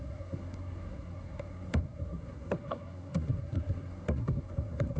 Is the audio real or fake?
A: fake